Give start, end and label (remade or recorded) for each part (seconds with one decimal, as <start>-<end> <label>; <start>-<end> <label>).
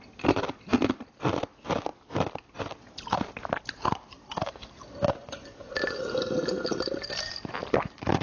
0.0-5.2 recorded; 5.2-5.7 remade; 5.7-8.2 recorded